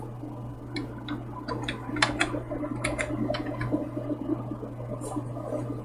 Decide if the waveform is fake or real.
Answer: real